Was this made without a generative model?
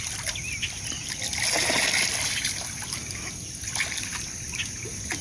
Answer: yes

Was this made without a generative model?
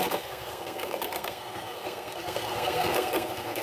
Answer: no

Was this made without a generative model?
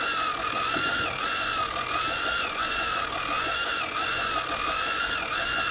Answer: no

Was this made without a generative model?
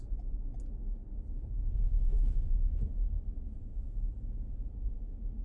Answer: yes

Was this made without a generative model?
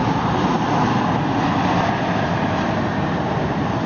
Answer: yes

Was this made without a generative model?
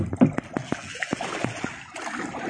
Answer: yes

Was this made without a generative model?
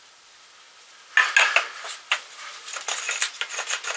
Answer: yes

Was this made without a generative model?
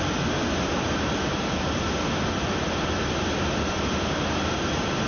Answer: yes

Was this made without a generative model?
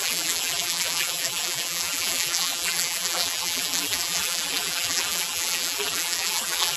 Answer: no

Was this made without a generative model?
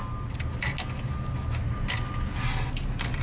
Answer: yes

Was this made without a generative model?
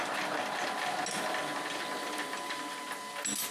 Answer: yes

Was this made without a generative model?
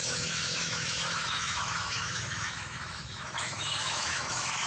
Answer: no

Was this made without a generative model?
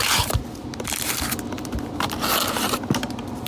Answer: yes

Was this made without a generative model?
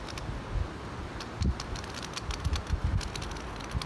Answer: yes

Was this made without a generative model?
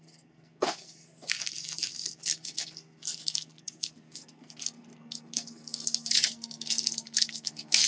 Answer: no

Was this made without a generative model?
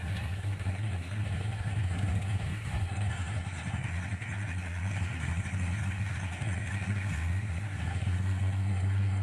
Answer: no